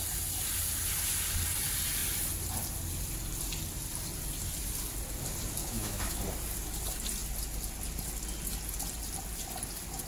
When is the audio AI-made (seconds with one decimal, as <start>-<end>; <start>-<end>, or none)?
5.6-6.2